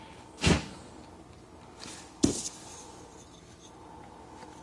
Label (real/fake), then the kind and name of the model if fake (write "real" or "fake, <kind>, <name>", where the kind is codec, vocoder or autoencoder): real